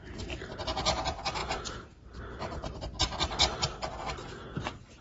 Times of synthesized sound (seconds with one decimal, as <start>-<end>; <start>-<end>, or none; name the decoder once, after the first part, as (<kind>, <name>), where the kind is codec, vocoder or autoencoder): none